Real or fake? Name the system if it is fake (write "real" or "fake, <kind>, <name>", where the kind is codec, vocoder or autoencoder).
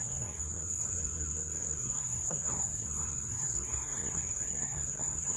fake, codec, SNAC